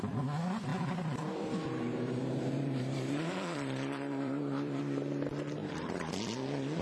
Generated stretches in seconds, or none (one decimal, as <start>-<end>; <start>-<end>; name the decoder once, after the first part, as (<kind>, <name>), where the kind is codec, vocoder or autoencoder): 0.7-4.8 (vocoder, BigVGAN v2); 5.6-6.1